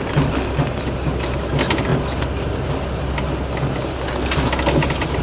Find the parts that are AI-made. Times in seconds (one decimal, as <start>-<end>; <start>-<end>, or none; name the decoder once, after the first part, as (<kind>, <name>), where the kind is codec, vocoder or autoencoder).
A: none